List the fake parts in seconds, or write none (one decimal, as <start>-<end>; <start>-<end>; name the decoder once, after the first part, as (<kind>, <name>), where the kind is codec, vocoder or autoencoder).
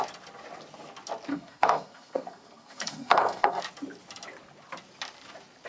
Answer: 1.3-3.6 (codec, SNAC)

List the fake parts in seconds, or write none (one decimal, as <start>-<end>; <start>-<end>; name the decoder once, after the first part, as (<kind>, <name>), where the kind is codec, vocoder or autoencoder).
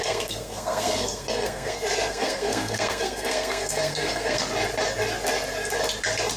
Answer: 0.0-4.4 (codec, SNAC)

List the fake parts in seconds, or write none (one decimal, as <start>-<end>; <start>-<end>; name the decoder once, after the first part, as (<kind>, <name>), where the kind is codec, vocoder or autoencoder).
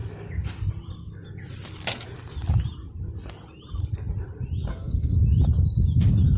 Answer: 4.7-5.2 (codec, SNAC)